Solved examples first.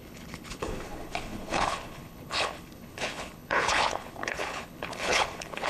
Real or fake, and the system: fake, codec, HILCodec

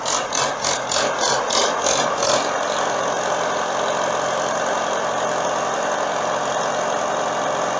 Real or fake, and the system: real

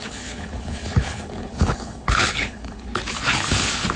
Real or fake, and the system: fake, codec, HILCodec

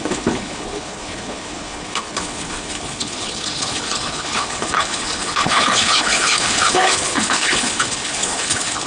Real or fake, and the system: fake, codec, HILCodec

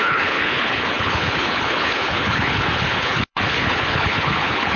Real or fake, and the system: fake, codec, HILCodec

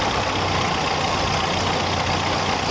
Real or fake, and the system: real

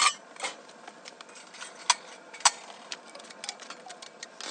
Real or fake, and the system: real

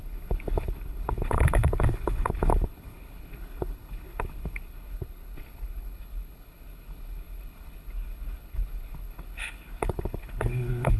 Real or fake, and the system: fake, codec, HILCodec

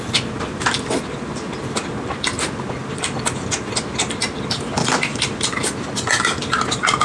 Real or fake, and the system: real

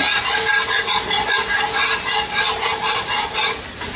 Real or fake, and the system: real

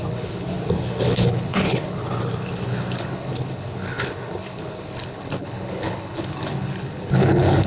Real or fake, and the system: fake, codec, HILCodec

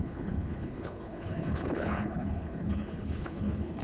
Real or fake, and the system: fake, codec, HILCodec